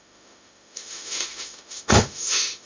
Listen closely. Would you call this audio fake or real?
fake